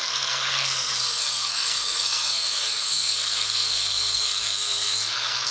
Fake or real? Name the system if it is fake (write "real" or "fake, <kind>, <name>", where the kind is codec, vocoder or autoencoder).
fake, codec, SNAC